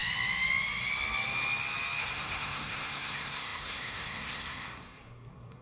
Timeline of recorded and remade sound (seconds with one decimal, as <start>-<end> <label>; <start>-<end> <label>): 0.0-2.0 recorded; 2.0-5.6 remade

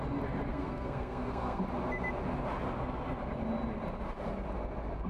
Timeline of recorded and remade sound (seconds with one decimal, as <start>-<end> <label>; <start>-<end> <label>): 0.0-0.5 recorded; 0.5-1.6 remade; 1.6-5.1 recorded